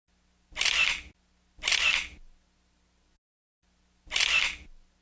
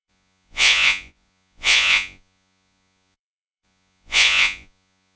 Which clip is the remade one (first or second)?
second